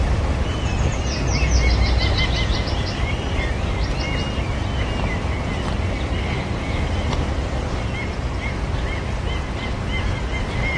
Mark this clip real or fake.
real